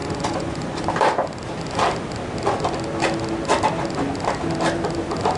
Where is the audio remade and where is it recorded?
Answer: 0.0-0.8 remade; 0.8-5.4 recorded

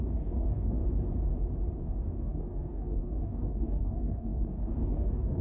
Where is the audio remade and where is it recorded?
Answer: 0.0-0.8 remade; 0.8-1.8 recorded; 1.8-5.4 remade

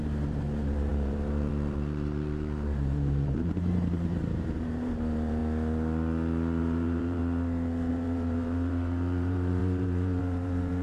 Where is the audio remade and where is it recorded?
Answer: 0.0-5.4 remade; 5.4-6.6 recorded; 6.6-7.2 remade; 7.2-7.9 recorded; 7.9-10.8 remade

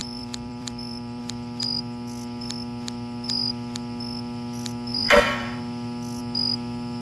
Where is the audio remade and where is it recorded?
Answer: 0.0-1.2 remade; 1.2-4.9 recorded; 4.9-5.6 remade; 5.6-7.0 recorded

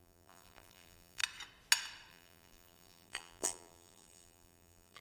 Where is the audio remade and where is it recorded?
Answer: 0.0-1.2 remade; 1.2-2.1 recorded; 2.1-5.0 remade

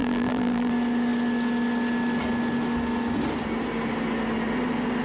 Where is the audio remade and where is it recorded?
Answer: 0.0-0.7 remade; 0.7-5.0 recorded